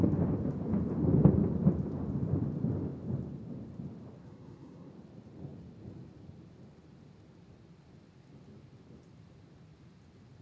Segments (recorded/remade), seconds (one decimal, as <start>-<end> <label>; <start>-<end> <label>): 0.0-4.2 recorded; 4.2-4.9 remade; 4.9-10.4 recorded